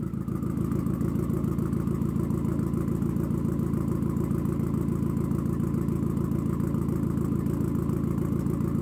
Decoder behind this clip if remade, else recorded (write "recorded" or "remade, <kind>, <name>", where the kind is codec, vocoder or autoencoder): recorded